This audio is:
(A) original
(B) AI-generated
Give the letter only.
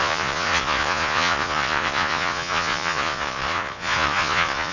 B